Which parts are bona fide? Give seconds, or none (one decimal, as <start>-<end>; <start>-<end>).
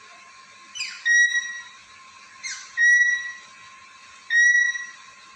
0.0-5.4